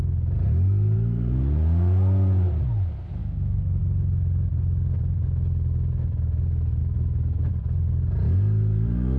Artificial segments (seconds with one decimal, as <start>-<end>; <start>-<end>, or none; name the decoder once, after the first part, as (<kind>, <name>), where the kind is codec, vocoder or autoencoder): 3.2-3.8 (autoencoder, DAC-VAE); 6.8-7.5